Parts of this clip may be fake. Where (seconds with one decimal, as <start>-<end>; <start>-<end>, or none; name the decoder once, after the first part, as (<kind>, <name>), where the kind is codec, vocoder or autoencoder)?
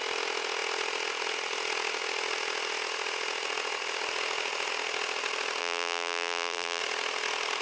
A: 5.6-6.8 (vocoder, BigVGAN v2)